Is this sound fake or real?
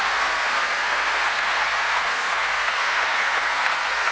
fake